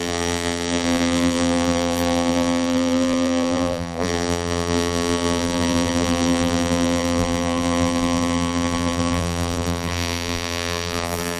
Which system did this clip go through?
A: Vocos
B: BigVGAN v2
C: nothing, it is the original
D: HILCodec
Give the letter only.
B